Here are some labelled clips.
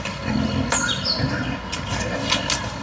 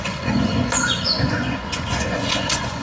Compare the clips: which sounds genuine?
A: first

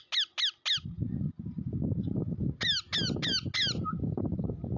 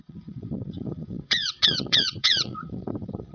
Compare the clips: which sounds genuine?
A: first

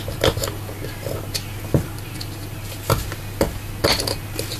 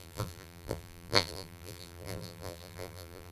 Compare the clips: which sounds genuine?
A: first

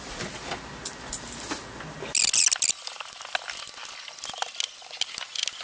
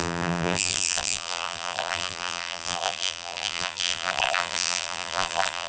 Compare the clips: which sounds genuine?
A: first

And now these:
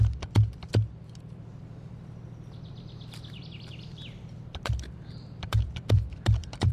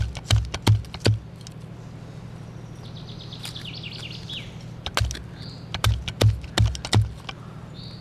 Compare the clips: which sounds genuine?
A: second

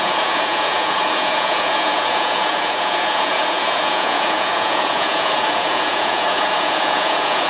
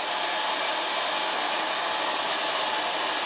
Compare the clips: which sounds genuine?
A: second